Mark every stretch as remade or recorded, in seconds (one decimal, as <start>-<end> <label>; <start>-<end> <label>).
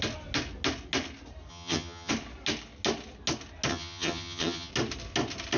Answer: 0.0-1.5 recorded; 1.5-2.1 remade; 2.1-3.7 recorded; 3.7-4.7 remade; 4.7-5.6 recorded